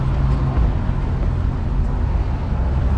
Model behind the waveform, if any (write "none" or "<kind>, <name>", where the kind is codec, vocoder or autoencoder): none